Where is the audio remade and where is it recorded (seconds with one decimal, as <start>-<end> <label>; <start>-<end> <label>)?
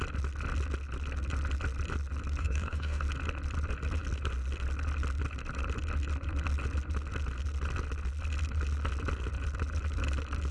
0.0-2.4 recorded; 2.4-3.0 remade; 3.0-10.5 recorded